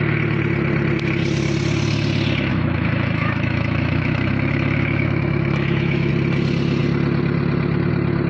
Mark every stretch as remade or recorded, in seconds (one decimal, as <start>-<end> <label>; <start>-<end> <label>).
0.0-2.5 recorded; 2.5-6.1 remade; 6.1-8.3 recorded